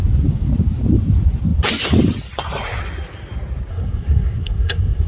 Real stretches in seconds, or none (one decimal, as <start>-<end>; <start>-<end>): 0.0-3.7